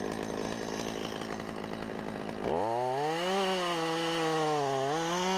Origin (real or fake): real